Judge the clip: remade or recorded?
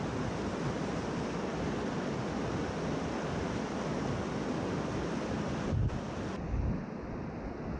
recorded